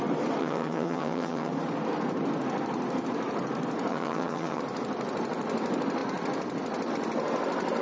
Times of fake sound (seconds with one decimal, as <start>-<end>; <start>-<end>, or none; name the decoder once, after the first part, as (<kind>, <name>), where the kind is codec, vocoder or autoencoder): 0.4-1.5 (vocoder, HiFi-GAN); 3.9-4.6